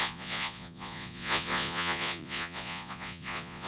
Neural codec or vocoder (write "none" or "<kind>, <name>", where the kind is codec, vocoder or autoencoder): vocoder, Vocos